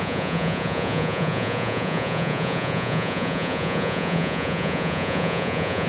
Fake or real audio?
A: fake